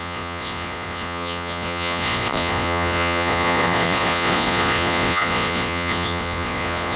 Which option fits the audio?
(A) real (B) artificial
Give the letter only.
B